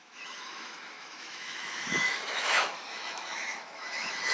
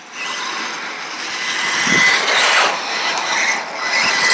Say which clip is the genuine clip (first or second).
second